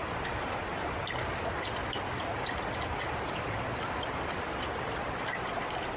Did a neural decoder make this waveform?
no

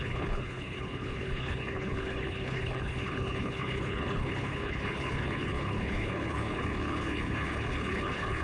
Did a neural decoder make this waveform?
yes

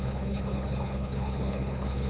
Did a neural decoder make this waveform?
yes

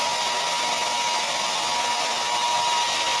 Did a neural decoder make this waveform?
no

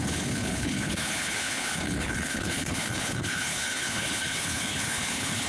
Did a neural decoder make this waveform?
yes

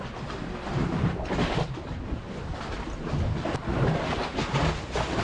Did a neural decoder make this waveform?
no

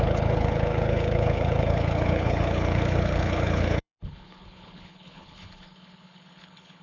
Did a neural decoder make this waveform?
yes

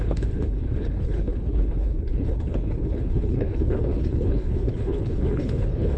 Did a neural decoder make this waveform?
yes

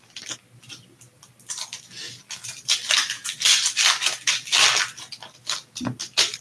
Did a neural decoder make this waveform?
no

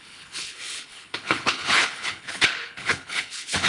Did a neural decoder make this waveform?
yes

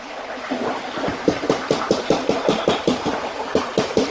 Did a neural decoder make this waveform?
no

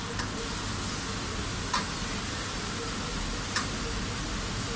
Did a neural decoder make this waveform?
no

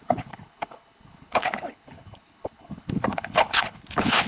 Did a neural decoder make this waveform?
yes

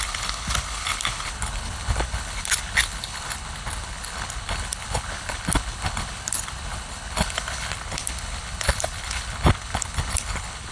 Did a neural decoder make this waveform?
yes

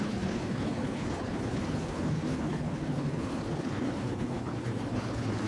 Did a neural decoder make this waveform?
yes